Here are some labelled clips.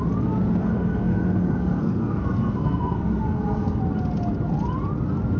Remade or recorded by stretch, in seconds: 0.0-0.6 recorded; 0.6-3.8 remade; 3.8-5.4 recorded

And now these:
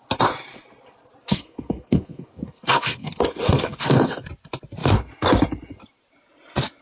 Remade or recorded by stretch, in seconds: 0.0-1.3 recorded; 1.3-4.2 remade; 4.2-6.8 recorded

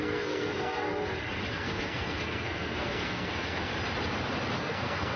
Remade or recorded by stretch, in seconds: 0.0-0.9 remade; 0.9-1.5 recorded; 1.5-3.7 remade; 3.7-4.6 recorded; 4.6-5.2 remade

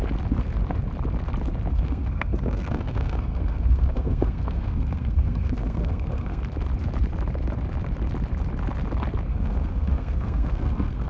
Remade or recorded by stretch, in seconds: 0.0-1.7 recorded; 1.7-6.4 remade; 6.4-9.3 recorded; 9.3-11.1 remade

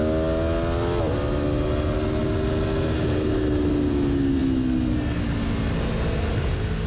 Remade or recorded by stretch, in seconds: 0.0-6.9 recorded

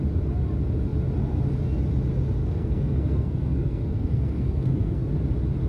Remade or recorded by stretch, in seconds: 0.0-2.4 recorded; 2.4-5.1 remade; 5.1-5.7 recorded

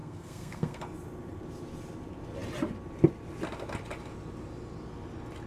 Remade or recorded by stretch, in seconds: 0.0-0.8 remade; 0.8-5.5 recorded